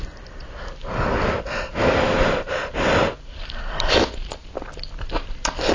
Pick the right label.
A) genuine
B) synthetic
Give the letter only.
A